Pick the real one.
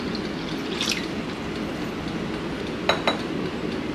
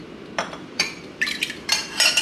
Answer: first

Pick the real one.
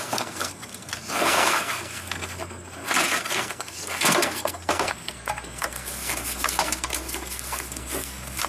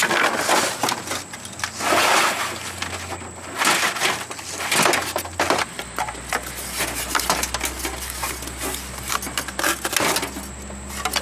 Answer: second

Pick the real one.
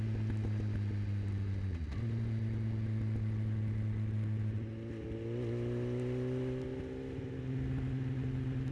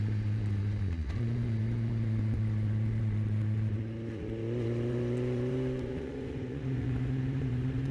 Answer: first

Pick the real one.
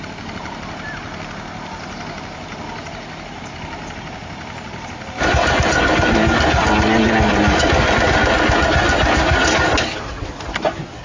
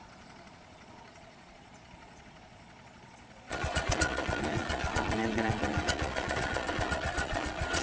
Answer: first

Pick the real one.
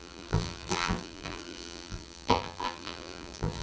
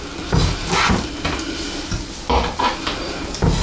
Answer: second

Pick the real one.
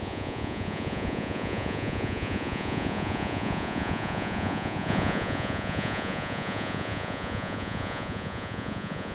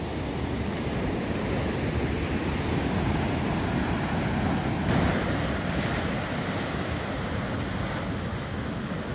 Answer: second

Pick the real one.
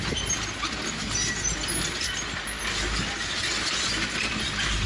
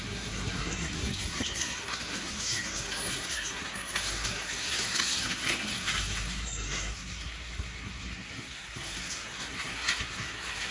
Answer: first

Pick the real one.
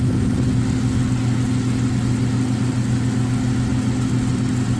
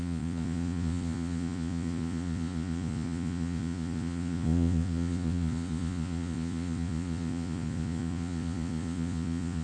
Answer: first